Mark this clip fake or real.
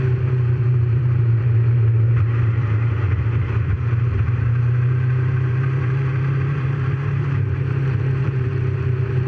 fake